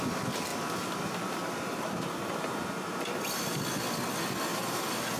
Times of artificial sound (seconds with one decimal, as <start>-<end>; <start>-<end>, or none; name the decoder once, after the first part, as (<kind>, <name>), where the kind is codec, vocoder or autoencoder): 0.5-3.6 (vocoder, BigVGAN v2); 4.5-5.2